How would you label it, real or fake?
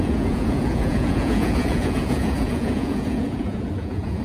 fake